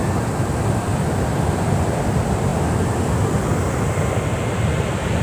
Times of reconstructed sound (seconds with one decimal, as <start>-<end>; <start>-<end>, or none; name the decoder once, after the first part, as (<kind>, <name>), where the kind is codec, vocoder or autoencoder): 0.8-2.5 (vocoder, BigVGAN v2); 3.5-5.2